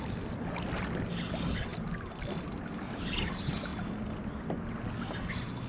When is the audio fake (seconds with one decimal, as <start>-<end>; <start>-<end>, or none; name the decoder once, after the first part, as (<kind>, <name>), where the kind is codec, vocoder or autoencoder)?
none